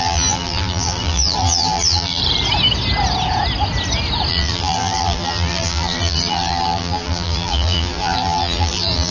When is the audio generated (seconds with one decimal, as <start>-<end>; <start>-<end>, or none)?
0.0-2.2; 4.3-9.1